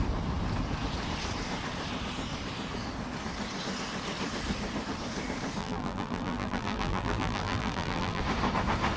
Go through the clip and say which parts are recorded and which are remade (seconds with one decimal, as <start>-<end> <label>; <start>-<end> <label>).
0.0-5.6 recorded; 5.6-8.2 remade; 8.2-9.0 recorded